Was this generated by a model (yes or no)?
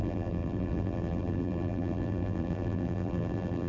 yes